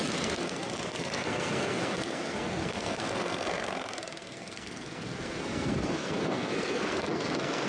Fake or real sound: fake